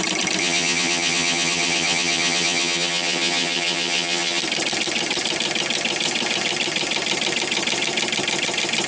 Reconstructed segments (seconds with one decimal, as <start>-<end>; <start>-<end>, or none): 0.4-4.4